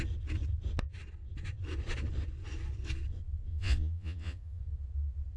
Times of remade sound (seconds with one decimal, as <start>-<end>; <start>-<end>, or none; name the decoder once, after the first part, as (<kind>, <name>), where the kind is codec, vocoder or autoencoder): 3.5-4.6 (vocoder, Vocos)